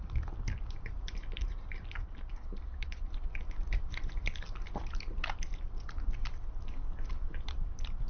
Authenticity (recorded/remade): recorded